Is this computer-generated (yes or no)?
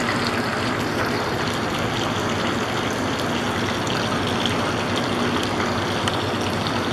no